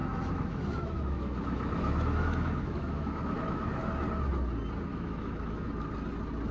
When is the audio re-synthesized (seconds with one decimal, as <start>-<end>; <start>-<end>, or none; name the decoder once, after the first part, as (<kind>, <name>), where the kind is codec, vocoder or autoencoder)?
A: 0.0-3.9 (autoencoder, DAC-VAE); 4.9-5.7